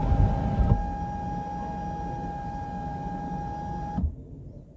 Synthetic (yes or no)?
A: no